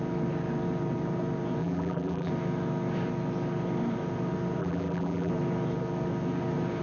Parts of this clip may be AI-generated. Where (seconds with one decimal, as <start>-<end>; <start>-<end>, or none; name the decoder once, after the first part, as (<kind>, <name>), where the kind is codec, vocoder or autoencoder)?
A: 1.6-2.3 (vocoder, BigVGAN v2); 4.6-5.3